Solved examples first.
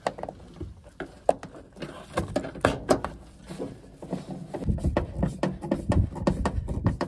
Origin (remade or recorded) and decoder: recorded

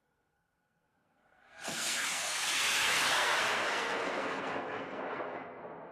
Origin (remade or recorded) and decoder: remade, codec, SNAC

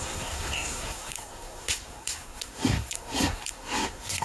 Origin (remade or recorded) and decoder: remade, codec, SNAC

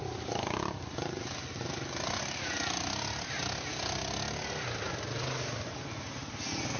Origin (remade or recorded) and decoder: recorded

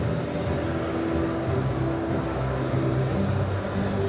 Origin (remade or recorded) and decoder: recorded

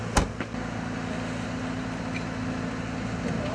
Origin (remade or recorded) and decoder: recorded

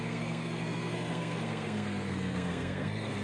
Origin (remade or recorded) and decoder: remade, codec, SNAC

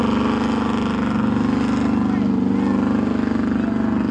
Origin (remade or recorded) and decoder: recorded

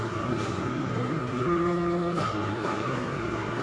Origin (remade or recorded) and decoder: remade, codec, SNAC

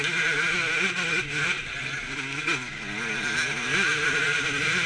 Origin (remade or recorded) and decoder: recorded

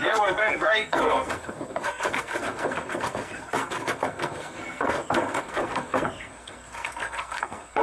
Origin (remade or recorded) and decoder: remade, codec, SNAC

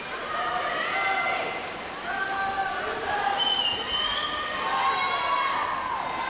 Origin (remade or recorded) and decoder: recorded